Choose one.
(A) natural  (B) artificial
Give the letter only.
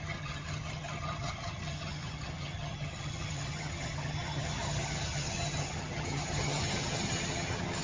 B